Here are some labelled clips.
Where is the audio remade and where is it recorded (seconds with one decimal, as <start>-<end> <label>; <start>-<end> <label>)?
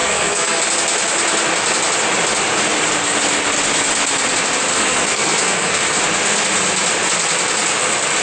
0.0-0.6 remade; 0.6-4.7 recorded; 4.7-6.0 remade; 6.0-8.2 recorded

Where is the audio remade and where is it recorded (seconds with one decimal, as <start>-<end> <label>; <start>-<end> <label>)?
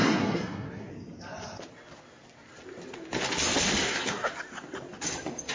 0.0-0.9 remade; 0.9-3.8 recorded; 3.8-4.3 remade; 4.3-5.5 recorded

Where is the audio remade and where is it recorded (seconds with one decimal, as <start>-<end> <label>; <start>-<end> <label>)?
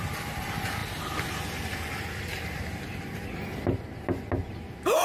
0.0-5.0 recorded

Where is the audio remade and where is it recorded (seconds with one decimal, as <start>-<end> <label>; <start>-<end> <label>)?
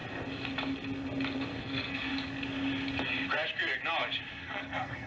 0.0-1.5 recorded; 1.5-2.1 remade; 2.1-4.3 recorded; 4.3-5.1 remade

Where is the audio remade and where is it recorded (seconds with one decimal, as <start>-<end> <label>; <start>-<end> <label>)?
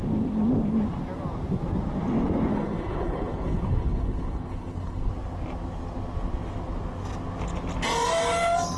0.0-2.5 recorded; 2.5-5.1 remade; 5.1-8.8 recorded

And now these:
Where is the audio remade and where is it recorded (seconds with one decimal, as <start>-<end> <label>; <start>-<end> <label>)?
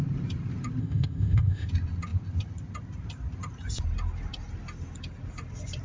0.0-0.8 recorded; 0.8-1.7 remade; 1.7-5.8 recorded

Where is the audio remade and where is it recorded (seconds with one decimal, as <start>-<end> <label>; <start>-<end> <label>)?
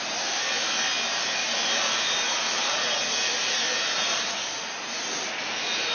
0.0-1.4 recorded; 1.4-4.9 remade; 4.9-5.9 recorded